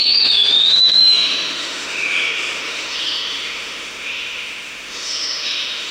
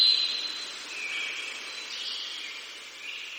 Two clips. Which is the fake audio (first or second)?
first